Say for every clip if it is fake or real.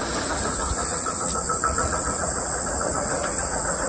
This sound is fake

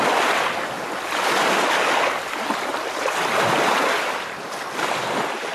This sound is real